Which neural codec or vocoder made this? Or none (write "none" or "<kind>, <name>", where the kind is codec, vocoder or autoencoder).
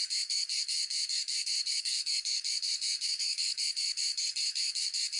codec, SNAC